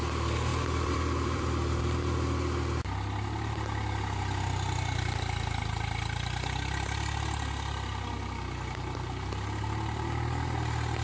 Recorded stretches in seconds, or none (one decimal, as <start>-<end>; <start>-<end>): 0.0-0.5; 1.8-11.0